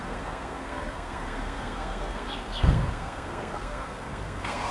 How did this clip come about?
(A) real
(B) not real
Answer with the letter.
B